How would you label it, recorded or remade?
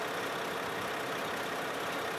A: recorded